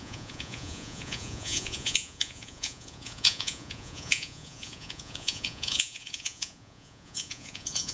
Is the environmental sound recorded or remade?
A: remade